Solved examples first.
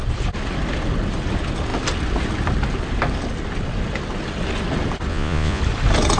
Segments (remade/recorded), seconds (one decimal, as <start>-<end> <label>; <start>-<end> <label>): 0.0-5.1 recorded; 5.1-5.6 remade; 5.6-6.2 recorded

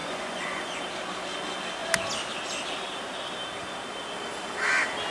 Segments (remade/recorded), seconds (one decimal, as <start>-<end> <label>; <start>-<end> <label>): 0.0-0.8 remade; 0.8-5.1 recorded

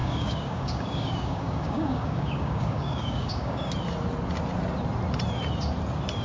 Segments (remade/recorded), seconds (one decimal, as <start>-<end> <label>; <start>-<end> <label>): 0.0-3.7 remade; 3.7-6.2 recorded